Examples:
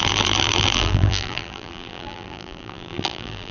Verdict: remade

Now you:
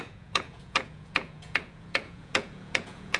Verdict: remade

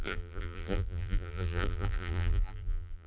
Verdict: remade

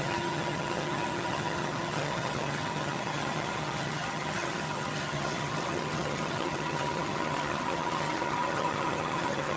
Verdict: remade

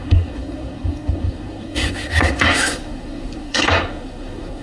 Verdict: remade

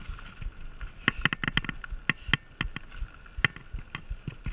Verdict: recorded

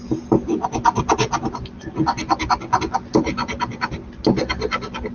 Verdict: recorded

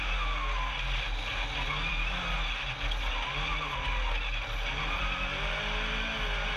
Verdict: recorded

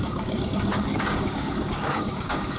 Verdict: remade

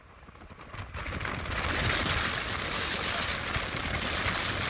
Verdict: recorded